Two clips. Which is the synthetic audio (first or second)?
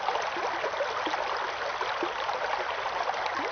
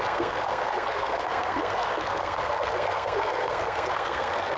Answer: second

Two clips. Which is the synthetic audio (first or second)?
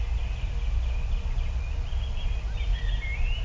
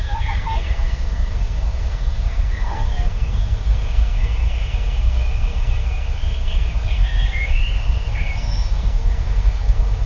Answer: second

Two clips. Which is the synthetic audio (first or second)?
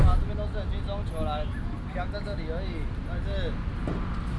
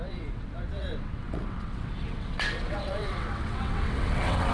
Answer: second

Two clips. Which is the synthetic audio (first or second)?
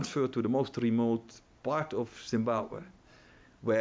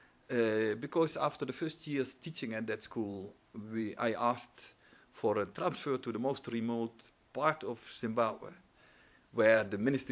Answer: second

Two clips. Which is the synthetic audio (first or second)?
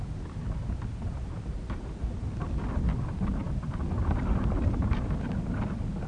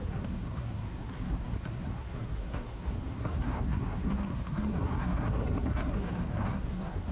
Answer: second